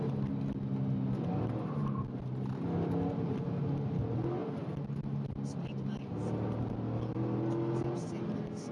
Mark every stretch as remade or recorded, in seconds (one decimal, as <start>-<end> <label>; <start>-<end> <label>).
0.0-8.7 recorded